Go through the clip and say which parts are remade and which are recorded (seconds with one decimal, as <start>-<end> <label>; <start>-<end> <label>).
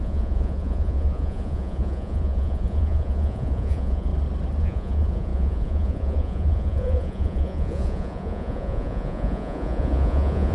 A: 0.0-4.1 remade; 4.1-4.6 recorded; 4.6-10.5 remade